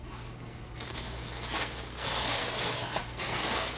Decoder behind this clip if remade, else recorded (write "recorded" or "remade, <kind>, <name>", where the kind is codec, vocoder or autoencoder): remade, codec, SNAC